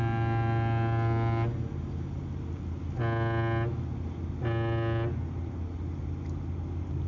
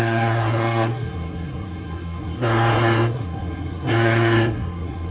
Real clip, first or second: first